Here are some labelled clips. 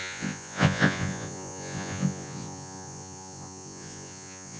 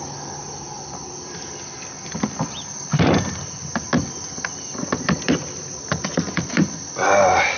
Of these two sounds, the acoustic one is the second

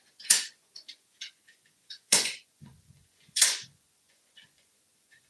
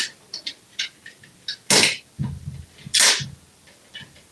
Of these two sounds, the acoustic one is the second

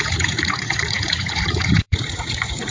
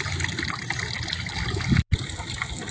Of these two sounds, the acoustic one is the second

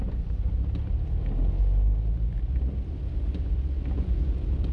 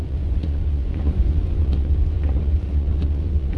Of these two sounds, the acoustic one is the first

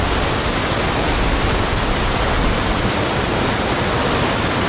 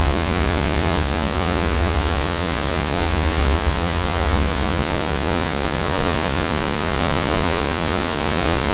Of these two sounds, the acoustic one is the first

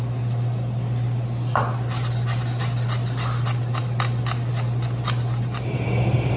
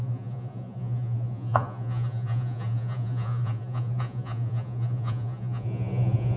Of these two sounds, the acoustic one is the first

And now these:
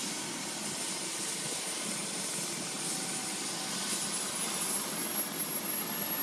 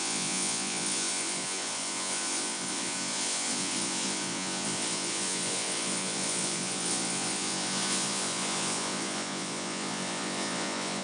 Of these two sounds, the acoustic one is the first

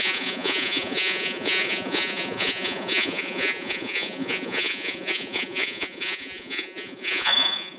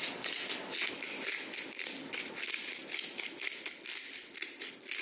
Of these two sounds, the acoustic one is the second